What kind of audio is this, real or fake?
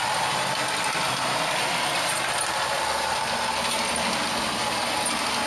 real